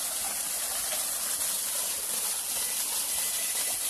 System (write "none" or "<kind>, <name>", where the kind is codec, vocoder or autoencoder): vocoder, BigVGAN v2